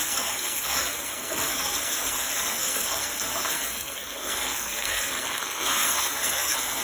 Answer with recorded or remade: remade